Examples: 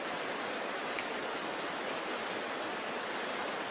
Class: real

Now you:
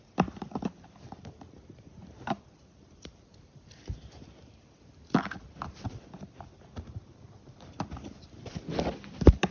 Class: real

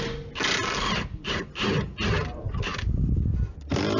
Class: real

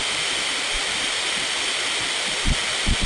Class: real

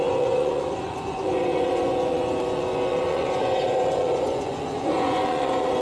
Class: fake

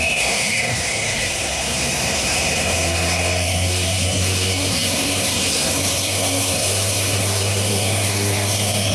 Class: fake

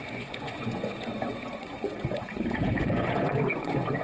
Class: fake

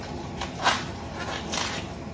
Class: real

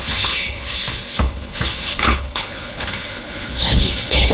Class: fake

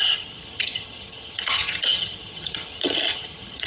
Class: fake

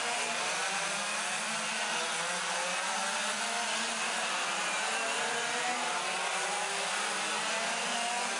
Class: real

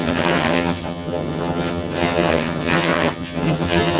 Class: fake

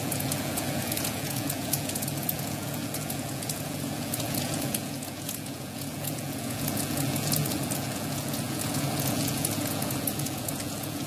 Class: fake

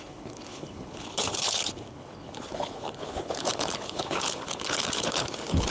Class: fake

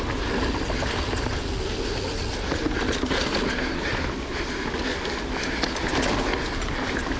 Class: real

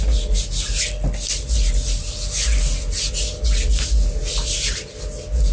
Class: real